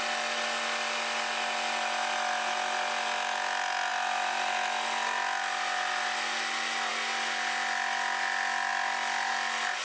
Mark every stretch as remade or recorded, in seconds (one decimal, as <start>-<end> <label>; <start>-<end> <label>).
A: 0.0-9.8 recorded